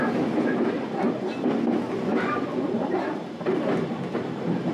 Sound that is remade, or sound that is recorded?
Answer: recorded